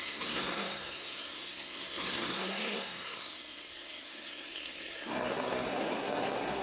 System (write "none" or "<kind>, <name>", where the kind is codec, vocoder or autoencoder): codec, SNAC